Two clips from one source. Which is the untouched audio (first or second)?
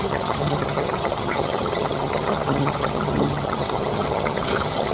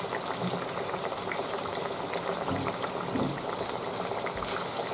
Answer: second